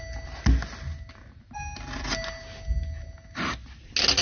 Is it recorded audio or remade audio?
recorded